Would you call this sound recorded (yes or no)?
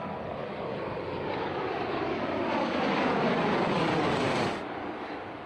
no